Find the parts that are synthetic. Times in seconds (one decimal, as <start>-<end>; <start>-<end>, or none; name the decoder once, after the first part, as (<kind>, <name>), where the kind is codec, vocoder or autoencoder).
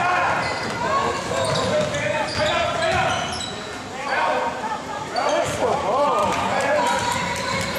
4.0-4.9 (vocoder, BigVGAN v2); 6.2-7.8